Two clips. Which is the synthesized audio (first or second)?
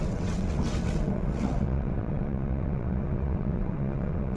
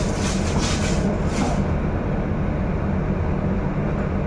first